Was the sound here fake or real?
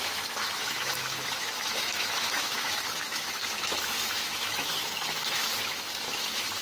fake